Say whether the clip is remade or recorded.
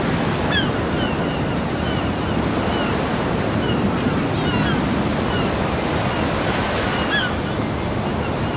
recorded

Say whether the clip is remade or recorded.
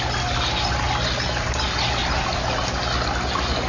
recorded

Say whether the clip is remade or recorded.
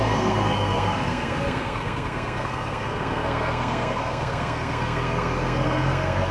remade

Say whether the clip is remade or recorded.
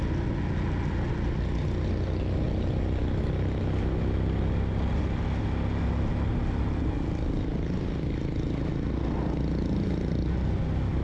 recorded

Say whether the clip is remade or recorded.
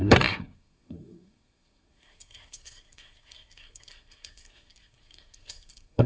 remade